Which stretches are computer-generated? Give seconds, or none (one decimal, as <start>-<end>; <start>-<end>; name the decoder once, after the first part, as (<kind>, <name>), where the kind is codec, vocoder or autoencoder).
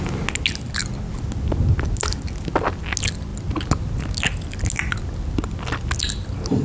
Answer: none